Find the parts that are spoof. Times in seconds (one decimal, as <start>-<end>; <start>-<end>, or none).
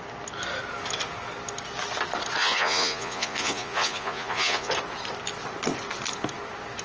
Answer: 2.4-4.7